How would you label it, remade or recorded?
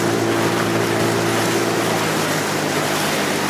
recorded